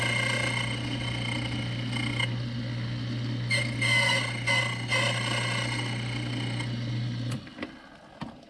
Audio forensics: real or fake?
real